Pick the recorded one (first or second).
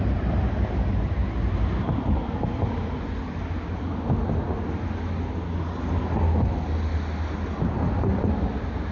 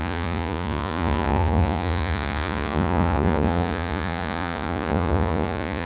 first